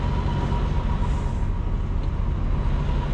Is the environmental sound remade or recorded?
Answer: recorded